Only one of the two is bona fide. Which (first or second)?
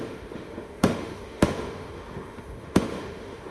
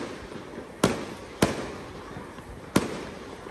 second